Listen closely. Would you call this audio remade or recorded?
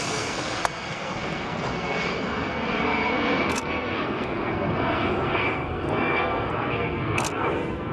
remade